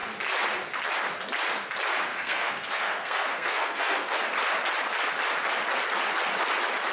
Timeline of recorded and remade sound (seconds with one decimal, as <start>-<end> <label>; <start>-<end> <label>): 0.0-2.1 recorded; 2.1-4.2 remade; 4.2-6.9 recorded